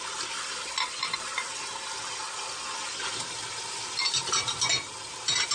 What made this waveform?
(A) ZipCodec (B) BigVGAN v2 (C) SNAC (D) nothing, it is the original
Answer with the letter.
D